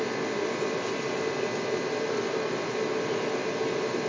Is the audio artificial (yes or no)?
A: no